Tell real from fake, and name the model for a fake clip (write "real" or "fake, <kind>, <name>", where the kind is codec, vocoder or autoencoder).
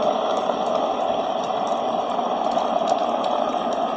real